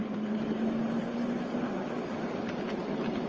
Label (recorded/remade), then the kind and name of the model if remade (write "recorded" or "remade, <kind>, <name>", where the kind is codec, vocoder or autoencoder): recorded